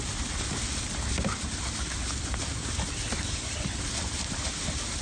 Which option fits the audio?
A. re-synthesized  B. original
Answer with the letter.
B